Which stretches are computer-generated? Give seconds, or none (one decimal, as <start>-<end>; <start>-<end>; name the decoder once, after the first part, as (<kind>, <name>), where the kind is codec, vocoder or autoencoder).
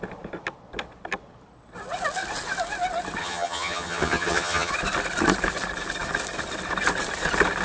3.2-4.7 (vocoder, HiFi-GAN)